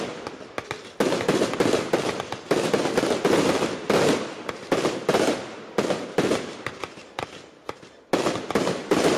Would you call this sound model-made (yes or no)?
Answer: no